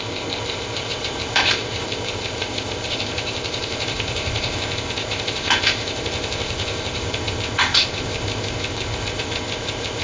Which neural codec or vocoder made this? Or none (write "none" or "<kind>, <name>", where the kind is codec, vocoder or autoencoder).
codec, ZipCodec